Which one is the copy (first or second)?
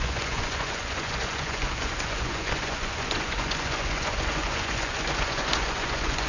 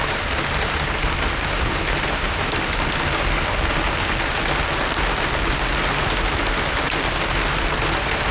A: first